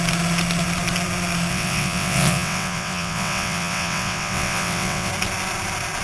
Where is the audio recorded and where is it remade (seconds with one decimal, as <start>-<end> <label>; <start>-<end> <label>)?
0.0-1.5 recorded; 1.5-5.1 remade; 5.1-6.0 recorded